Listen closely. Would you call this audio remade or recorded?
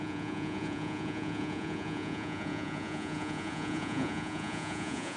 remade